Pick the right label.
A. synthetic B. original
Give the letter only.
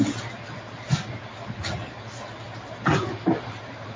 B